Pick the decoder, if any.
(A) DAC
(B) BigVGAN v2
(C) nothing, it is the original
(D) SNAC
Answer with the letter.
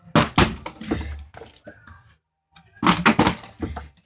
C